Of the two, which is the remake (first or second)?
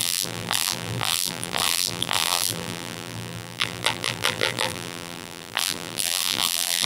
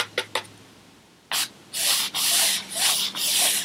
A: first